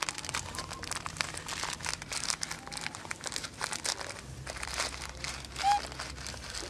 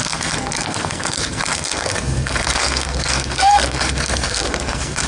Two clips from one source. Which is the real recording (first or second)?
first